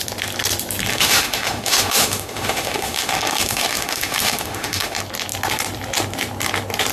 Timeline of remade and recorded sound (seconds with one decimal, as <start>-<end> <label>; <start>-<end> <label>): 0.0-0.9 recorded; 0.9-5.0 remade; 5.0-6.9 recorded